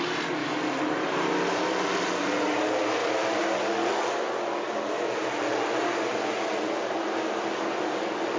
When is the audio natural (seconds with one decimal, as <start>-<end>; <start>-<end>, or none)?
0.0-8.4